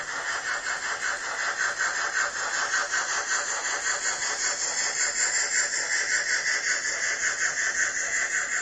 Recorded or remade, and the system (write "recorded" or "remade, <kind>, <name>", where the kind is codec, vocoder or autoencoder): recorded